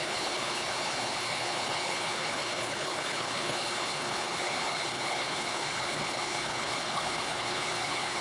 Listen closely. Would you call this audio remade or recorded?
remade